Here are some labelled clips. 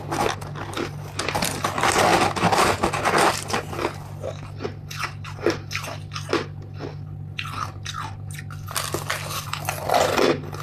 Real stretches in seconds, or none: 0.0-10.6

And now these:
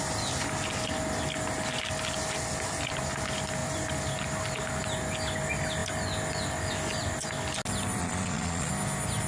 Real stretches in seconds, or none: 0.0-8.0; 8.7-9.3

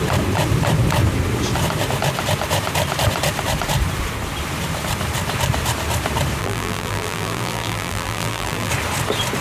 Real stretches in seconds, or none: 0.0-6.4; 8.7-9.4

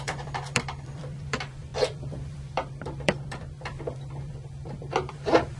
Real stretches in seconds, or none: none

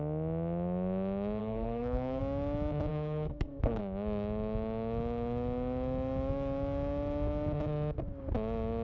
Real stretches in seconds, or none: 0.0-1.4; 2.2-2.9; 3.8-8.8

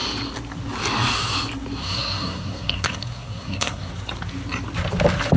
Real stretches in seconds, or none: 0.0-1.8; 3.9-5.4

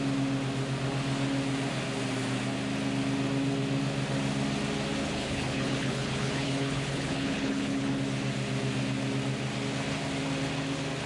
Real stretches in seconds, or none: 0.0-5.0; 8.0-11.1

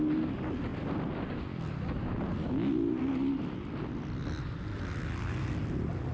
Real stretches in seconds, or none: 0.0-6.1